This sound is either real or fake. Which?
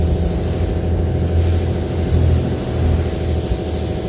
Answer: real